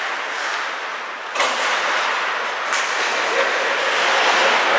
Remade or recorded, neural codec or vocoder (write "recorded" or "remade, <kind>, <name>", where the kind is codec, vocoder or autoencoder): recorded